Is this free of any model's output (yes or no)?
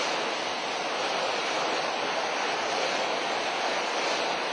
yes